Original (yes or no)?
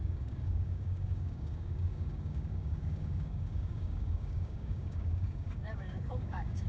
no